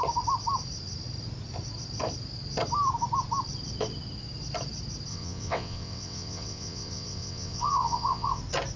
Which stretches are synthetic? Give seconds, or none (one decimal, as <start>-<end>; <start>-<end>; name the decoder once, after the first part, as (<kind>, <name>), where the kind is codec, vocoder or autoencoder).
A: 5.1-8.4 (vocoder, WaveNeXt)